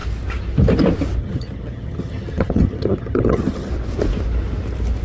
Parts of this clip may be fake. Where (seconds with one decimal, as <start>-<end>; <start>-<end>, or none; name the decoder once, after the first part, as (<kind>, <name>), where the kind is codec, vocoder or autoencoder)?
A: 1.2-3.7 (vocoder, HiFi-GAN)